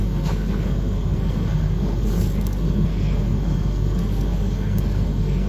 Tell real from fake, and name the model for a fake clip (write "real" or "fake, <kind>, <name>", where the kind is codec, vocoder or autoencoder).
fake, codec, SNAC